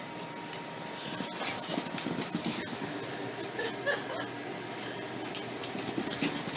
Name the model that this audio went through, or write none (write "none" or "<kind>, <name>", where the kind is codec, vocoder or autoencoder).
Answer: none